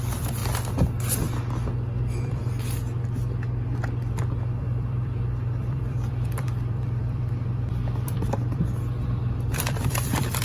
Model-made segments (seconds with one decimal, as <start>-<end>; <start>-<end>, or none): 0.0-0.4; 2.0-2.4; 4.6-10.4